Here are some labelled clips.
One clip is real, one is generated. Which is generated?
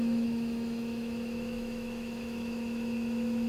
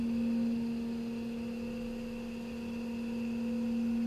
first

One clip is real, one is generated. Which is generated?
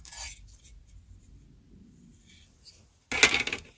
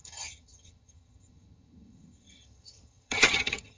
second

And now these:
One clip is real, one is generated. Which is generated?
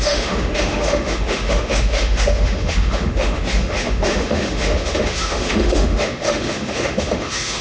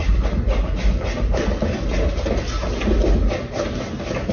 first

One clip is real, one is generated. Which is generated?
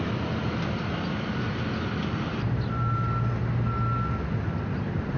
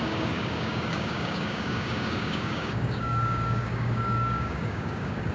second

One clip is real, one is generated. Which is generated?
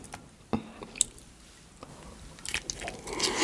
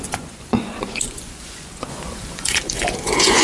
second